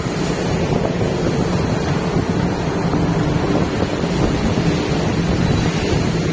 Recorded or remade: recorded